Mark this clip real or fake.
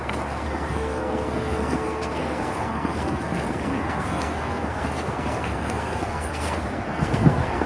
fake